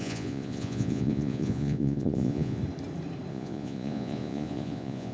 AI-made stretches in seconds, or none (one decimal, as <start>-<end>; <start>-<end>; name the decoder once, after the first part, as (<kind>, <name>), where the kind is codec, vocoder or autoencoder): 0.0-2.6 (vocoder, Vocos); 3.3-5.1